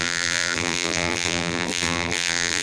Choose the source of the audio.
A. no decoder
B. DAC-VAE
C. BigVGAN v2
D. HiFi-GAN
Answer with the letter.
C